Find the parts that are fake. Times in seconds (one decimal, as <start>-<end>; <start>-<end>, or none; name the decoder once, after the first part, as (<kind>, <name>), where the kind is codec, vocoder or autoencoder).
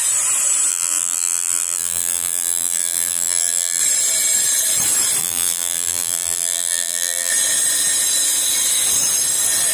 0.7-3.8 (vocoder, BigVGAN v2); 5.2-7.3